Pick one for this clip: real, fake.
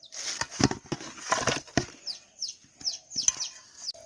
real